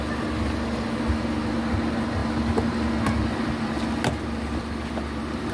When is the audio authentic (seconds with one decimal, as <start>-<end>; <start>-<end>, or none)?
0.0-5.5